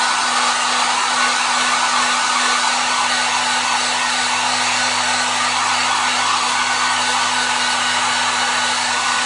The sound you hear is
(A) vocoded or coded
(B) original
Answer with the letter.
B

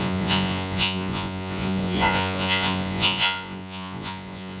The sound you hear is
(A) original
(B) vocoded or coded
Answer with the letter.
B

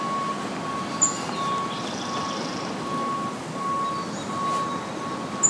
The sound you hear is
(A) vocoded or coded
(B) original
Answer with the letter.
B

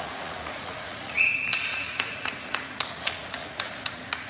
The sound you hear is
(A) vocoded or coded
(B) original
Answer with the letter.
A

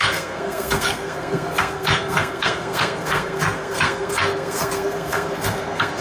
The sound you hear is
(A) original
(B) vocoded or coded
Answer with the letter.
B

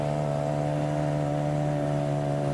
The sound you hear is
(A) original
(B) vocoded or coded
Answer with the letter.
B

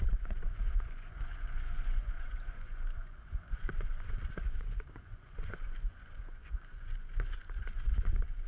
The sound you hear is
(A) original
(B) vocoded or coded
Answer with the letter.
B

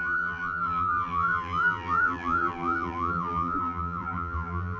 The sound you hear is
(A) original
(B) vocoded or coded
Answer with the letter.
B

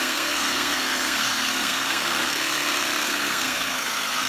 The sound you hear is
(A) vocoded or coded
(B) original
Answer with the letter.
A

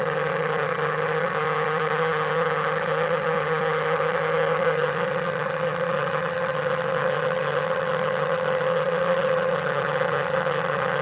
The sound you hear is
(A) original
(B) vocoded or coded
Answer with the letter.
B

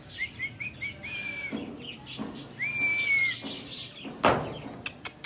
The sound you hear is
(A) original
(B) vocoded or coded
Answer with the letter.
A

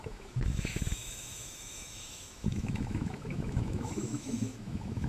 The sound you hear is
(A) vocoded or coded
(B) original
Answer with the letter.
A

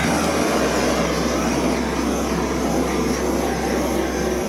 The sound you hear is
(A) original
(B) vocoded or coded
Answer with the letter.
A